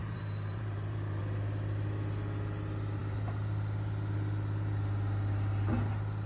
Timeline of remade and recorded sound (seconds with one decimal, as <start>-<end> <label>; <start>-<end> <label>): 0.0-1.2 remade; 1.2-6.3 recorded